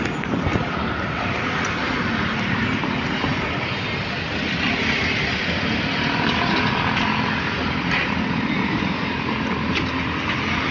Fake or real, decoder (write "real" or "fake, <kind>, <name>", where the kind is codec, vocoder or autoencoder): real